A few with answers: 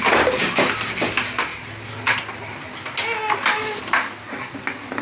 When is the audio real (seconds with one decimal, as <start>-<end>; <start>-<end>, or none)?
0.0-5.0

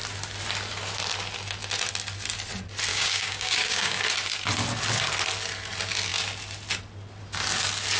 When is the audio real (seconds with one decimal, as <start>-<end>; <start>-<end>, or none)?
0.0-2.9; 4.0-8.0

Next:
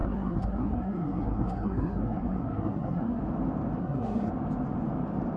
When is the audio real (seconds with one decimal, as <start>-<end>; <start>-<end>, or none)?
3.2-3.8; 4.3-5.4